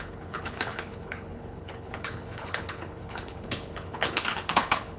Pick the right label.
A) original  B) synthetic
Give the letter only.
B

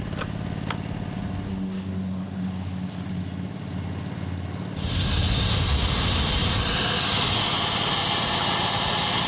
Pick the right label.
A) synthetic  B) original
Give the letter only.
B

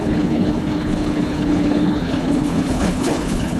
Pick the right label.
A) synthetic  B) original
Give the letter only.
A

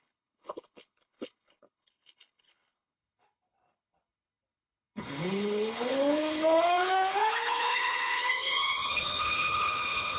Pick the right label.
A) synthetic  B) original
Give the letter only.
A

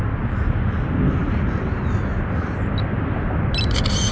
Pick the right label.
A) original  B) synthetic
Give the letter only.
A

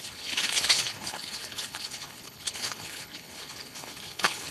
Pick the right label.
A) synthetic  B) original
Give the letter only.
A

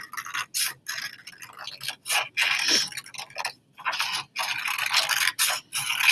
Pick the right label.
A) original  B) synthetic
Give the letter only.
A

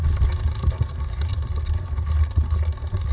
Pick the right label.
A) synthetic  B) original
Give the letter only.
B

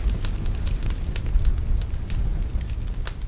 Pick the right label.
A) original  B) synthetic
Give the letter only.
A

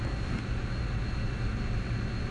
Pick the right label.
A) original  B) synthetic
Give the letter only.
A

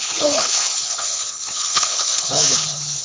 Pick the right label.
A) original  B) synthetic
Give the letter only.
B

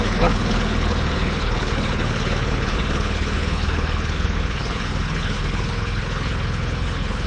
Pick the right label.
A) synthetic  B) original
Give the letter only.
A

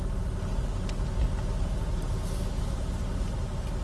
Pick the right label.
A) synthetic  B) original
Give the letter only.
B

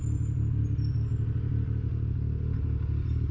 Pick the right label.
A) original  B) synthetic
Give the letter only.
A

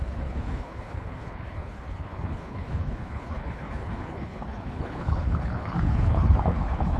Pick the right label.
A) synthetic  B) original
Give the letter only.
A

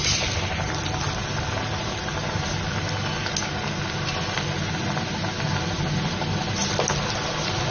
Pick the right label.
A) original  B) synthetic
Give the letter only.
A